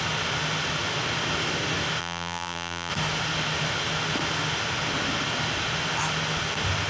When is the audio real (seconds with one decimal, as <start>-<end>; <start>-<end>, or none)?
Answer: 0.0-2.0; 2.9-6.9